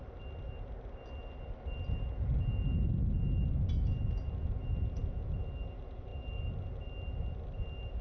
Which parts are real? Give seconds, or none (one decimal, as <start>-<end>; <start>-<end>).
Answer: 0.0-8.0